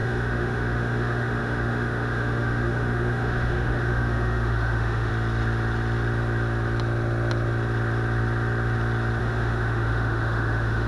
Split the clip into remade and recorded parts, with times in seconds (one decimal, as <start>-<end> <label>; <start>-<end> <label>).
0.0-5.1 remade; 5.1-9.2 recorded; 9.2-10.9 remade